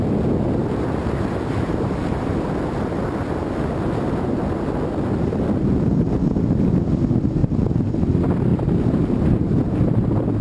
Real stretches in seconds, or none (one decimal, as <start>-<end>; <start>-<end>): 0.0-0.6; 3.1-7.4; 7.9-8.5; 9.6-10.4